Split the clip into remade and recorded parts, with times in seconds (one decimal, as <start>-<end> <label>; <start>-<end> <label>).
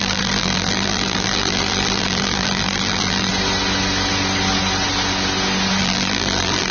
0.0-3.3 remade; 3.3-5.8 recorded; 5.8-6.7 remade